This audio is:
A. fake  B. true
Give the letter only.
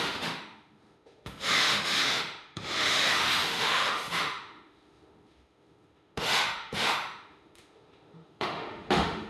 A